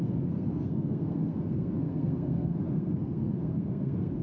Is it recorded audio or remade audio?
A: remade